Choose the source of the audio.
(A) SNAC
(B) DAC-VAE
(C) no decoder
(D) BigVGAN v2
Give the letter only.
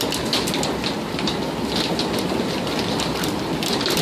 C